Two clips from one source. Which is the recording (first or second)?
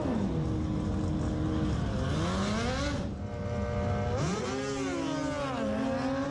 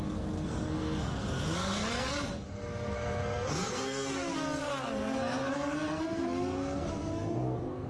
first